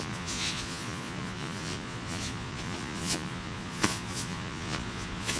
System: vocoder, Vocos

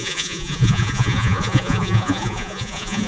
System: vocoder, Vocos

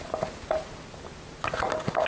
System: none